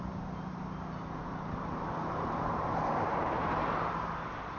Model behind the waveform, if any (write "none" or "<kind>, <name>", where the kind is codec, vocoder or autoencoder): vocoder, BigVGAN v2